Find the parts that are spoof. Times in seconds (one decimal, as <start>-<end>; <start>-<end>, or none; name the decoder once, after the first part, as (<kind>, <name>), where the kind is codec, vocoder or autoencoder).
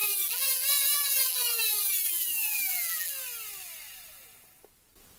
0.0-3.1 (vocoder, BigVGAN v2)